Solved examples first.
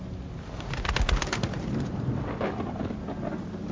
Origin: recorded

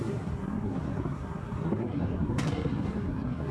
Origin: remade